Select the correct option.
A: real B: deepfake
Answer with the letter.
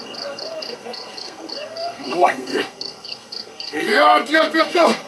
B